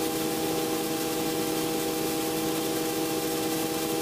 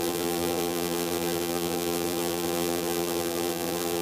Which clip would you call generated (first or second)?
second